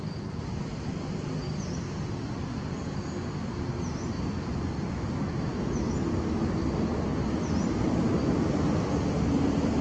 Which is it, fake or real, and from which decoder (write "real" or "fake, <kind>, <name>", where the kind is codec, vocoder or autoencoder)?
real